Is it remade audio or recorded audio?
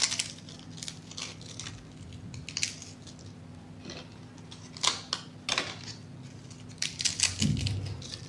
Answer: recorded